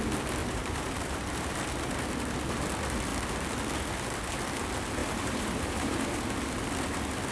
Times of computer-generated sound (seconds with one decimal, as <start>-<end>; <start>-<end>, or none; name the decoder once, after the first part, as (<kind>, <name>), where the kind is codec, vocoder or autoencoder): 0.4-1.5 (vocoder, BigVGAN v2); 5.0-6.2